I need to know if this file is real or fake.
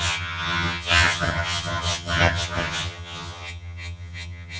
fake